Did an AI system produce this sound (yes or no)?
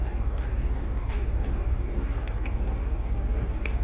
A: yes